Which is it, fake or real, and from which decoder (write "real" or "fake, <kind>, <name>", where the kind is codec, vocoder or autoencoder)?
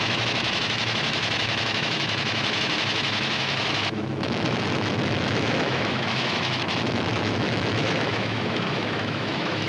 fake, autoencoder, DAC-VAE